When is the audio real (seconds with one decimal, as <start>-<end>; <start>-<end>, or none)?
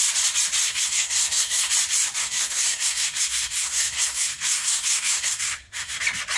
0.0-0.6; 1.7-2.2; 6.0-6.4